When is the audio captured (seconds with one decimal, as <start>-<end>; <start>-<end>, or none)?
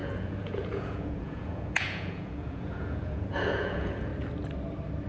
4.1-5.1